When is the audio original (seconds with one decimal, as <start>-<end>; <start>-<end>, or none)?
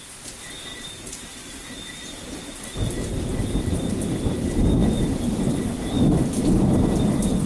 0.0-0.7; 3.5-7.5